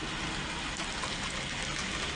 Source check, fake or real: real